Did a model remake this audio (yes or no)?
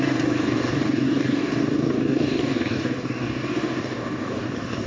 yes